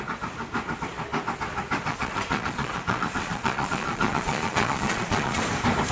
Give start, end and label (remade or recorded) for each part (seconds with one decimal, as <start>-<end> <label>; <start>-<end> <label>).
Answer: 0.0-1.9 recorded; 1.9-5.4 remade; 5.4-5.9 recorded